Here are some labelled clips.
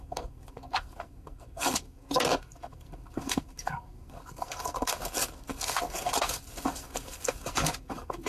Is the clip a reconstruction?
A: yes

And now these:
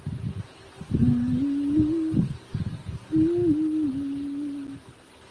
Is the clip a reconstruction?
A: no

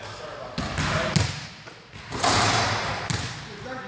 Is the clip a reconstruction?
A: no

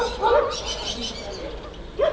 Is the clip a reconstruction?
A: no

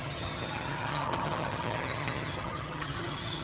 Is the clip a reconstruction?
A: yes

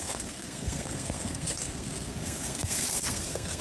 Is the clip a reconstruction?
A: yes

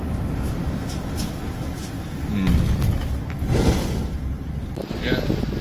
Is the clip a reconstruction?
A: no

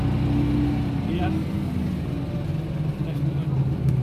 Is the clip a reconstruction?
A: no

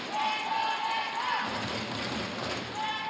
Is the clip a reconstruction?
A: no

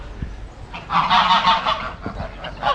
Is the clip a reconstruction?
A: no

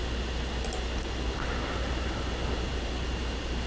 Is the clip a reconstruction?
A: no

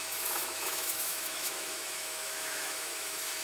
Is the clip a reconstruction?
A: yes